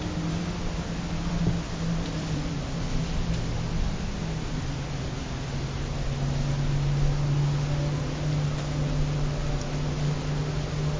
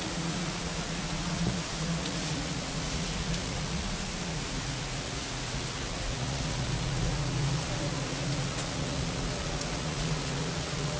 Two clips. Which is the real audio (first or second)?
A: first